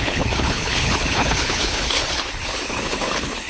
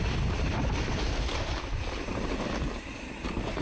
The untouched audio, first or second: second